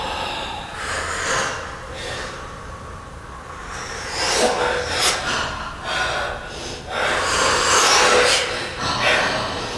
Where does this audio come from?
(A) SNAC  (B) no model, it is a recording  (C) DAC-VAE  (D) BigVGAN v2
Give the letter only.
B